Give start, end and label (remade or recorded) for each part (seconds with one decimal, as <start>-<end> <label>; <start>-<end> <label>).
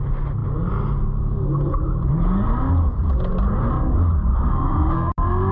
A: 0.0-4.3 recorded; 4.3-5.1 remade; 5.1-5.5 recorded